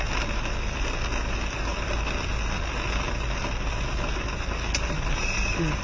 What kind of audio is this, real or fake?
real